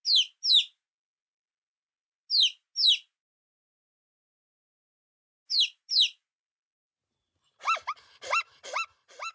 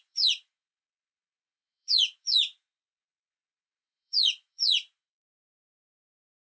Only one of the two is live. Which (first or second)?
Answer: first